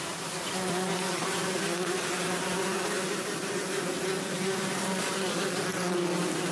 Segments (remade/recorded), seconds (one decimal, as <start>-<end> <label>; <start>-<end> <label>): 0.0-6.5 recorded